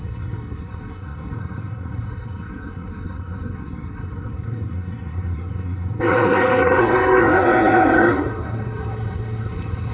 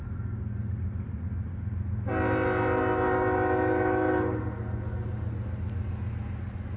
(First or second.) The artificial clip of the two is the first